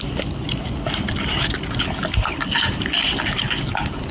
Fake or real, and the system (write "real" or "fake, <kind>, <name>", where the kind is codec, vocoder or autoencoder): real